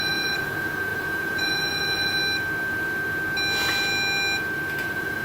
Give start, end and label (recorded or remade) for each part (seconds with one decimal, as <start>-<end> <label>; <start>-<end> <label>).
0.0-2.2 remade; 2.2-4.8 recorded; 4.8-5.2 remade